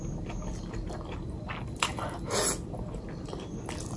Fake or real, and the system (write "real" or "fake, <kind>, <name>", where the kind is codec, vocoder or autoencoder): real